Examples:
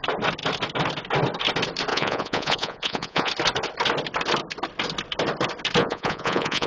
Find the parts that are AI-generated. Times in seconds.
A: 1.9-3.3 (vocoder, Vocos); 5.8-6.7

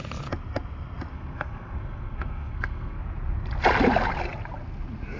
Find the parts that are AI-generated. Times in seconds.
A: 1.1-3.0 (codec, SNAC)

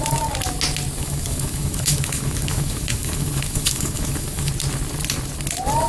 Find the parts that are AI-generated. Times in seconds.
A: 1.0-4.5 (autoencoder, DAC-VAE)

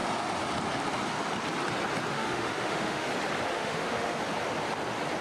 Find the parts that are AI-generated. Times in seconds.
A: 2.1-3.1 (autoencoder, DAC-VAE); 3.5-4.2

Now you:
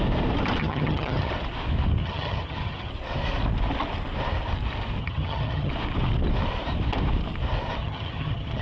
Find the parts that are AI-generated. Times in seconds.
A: 0.6-1.3 (vocoder, HiFi-GAN); 2.0-2.9; 5.0-5.7; 7.8-8.6

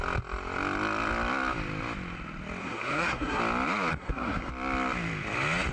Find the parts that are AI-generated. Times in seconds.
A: 2.6-3.4 (codec, SNAC); 3.9-4.5